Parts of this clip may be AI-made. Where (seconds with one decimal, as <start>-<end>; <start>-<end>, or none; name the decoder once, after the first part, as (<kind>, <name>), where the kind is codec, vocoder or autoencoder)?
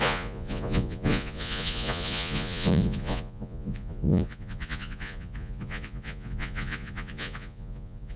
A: 0.0-8.2 (vocoder, Vocos)